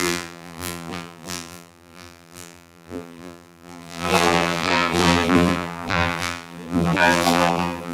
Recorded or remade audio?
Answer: remade